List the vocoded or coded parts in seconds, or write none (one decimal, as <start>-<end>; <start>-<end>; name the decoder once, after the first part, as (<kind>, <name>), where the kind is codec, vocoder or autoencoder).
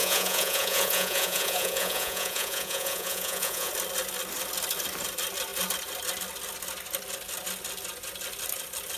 0.0-3.7 (vocoder, Vocos)